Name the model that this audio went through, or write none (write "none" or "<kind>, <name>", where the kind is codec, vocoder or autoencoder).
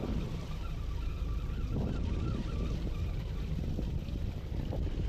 vocoder, BigVGAN v2